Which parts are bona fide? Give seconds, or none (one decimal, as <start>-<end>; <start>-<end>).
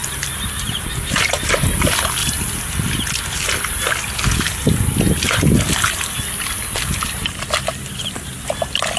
1.8-9.0